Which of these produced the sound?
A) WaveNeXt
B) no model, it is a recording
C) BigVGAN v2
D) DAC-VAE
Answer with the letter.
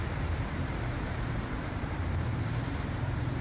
C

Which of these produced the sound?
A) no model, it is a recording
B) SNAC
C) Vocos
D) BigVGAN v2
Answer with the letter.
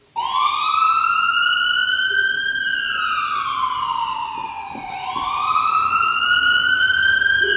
A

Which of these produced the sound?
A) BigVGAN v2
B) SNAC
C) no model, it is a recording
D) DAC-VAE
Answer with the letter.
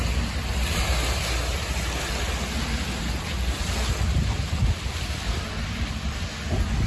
C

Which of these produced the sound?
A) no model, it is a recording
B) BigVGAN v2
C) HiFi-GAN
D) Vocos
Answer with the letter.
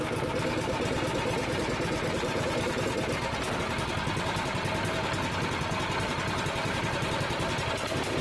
B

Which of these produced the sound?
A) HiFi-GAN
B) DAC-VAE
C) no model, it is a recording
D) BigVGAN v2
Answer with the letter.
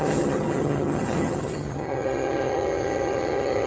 A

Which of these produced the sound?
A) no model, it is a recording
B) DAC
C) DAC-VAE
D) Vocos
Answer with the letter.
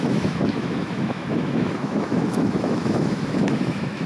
C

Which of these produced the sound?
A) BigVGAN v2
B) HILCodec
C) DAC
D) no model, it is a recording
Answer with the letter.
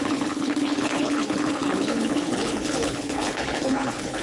B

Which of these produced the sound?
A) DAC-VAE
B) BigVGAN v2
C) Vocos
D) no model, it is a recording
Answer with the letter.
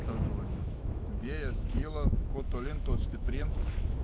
A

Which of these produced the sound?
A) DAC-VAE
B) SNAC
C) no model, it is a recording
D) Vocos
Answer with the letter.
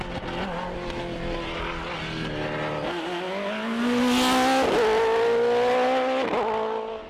C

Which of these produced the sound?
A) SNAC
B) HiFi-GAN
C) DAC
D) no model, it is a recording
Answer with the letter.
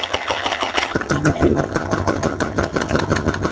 B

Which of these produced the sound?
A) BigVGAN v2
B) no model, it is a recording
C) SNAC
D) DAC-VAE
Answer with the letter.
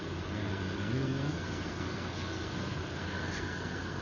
C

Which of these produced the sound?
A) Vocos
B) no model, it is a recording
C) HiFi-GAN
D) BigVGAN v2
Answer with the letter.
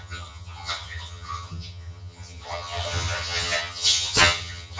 C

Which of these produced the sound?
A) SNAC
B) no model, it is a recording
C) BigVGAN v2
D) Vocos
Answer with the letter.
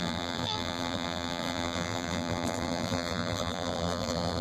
C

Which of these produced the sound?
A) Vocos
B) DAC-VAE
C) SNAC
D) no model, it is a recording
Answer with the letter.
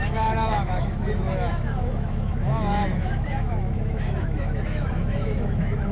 B